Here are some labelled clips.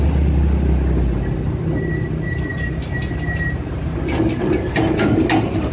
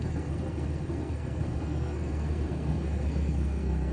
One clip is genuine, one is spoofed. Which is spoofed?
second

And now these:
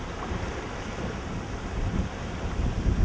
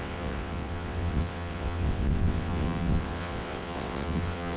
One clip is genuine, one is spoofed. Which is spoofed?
second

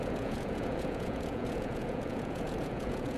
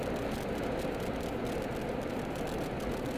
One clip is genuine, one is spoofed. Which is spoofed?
first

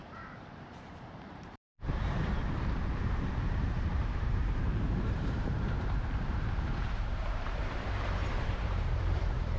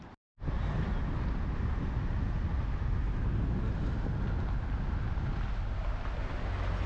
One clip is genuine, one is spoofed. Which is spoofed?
first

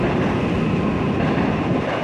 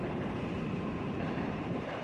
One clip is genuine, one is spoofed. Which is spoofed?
second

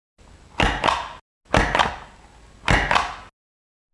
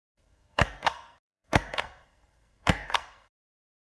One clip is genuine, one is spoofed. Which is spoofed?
second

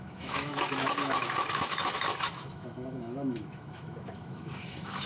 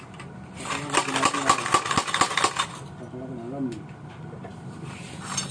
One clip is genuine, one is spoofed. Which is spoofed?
first